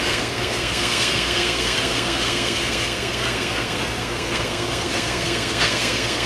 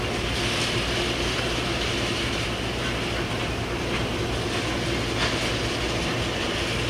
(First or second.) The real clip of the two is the second